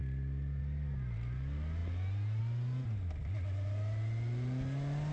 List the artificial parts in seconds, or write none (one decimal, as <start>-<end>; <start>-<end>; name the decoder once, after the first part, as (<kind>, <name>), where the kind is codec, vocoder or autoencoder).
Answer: 0.0-0.6 (vocoder, BigVGAN v2)